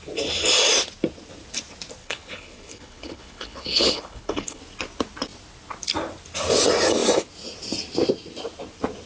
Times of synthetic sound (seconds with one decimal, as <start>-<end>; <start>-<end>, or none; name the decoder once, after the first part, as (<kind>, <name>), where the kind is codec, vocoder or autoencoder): 2.0-4.6 (codec, HILCodec)